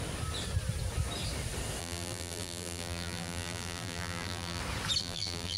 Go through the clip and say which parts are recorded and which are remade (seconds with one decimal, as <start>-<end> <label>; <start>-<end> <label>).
0.0-1.8 recorded; 1.8-4.6 remade; 4.6-5.0 recorded; 5.0-5.6 remade